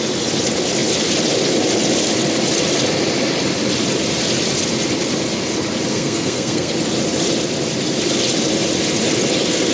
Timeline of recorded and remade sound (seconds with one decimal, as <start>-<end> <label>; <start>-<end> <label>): 0.0-5.9 recorded; 5.9-6.7 remade; 6.7-9.7 recorded